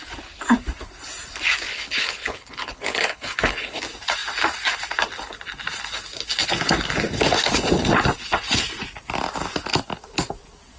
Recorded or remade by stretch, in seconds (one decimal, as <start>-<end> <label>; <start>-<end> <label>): 0.0-1.7 recorded; 1.7-3.8 remade; 3.8-10.8 recorded